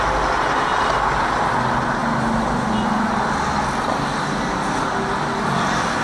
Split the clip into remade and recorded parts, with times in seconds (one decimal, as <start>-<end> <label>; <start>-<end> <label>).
0.0-6.0 recorded